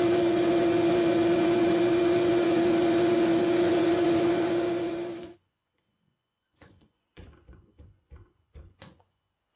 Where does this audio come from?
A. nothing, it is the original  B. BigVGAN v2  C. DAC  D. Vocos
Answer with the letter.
D